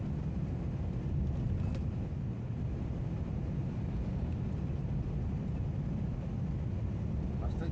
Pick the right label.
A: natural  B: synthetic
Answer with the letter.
A